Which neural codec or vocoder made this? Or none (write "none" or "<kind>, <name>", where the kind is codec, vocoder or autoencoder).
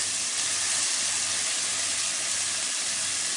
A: none